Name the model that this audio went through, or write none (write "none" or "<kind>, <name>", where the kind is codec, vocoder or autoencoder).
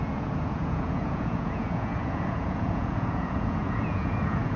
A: vocoder, Vocos